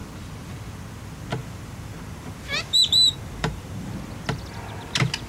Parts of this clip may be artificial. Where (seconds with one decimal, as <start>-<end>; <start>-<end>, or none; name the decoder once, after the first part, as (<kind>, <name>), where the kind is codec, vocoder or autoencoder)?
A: 1.4-3.9 (vocoder, BigVGAN v2)